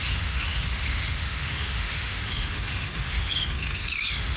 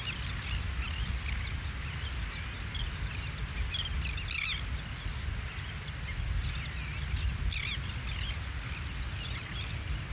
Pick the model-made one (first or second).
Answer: first